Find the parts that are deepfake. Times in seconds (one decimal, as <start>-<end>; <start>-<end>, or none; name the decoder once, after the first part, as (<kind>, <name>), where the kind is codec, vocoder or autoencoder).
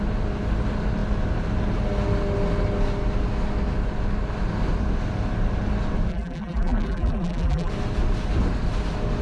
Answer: 6.1-7.7 (vocoder, BigVGAN v2)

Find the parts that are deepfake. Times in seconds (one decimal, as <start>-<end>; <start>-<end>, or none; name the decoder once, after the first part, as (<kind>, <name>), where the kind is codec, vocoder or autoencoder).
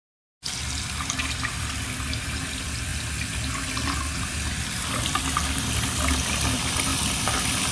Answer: 1.2-2.9 (vocoder, BigVGAN v2); 6.3-7.7